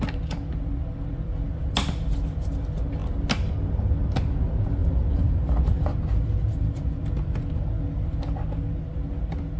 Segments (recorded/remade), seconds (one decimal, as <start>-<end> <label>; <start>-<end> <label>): 0.0-9.6 recorded